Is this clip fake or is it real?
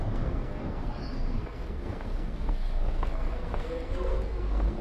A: fake